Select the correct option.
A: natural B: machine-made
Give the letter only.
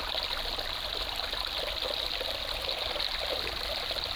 A